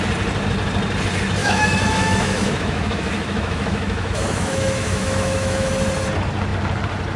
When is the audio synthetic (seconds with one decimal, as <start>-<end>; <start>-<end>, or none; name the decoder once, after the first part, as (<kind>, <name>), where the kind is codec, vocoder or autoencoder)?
1.4-5.7 (autoencoder, DAC-VAE)